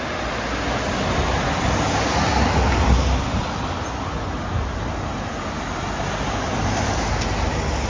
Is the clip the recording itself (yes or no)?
yes